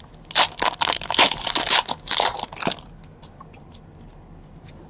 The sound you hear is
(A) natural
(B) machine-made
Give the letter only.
A